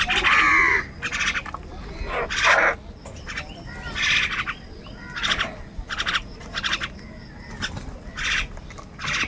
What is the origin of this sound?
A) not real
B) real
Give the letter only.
B